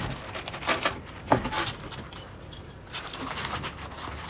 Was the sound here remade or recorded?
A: recorded